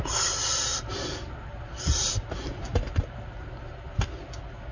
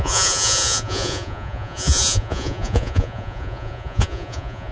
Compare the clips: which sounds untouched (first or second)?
first